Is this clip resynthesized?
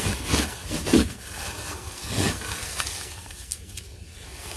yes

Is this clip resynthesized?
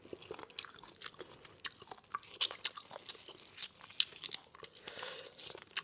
no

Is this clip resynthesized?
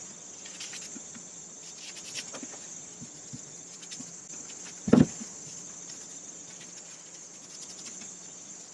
no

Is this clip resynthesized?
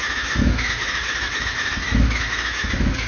yes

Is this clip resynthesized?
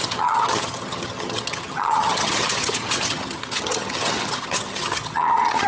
yes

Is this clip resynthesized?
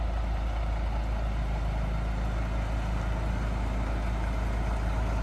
no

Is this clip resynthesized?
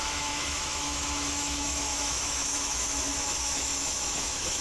yes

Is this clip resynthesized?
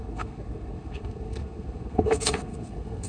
yes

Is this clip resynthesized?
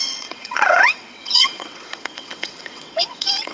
yes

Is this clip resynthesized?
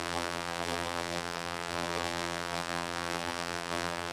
yes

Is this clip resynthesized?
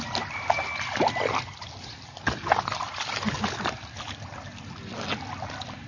no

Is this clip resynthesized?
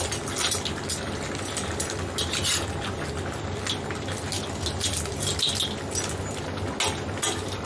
no